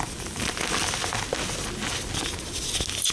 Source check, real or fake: real